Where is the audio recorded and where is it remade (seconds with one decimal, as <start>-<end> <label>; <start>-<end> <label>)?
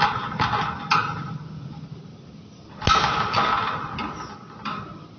0.0-5.2 recorded